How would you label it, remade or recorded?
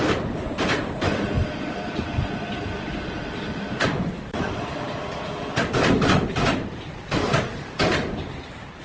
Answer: recorded